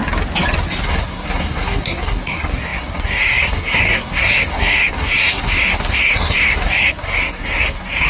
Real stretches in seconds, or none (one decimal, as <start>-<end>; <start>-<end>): 0.0-0.8